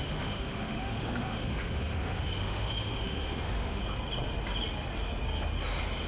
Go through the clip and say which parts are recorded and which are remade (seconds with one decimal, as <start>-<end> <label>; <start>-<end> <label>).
0.0-3.8 remade; 3.8-6.1 recorded